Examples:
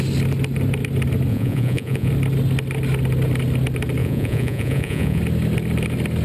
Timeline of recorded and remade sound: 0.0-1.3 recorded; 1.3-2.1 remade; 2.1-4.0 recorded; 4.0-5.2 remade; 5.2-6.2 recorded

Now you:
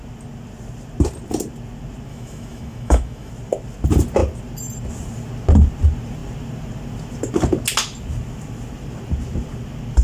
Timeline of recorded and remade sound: 0.0-2.1 recorded; 2.1-3.3 remade; 3.3-10.0 recorded